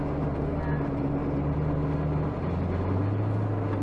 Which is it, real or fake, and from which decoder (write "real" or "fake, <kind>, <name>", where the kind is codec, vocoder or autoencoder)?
real